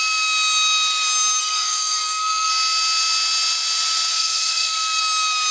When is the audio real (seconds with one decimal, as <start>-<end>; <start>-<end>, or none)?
0.0-1.4; 2.5-4.1; 5.0-5.5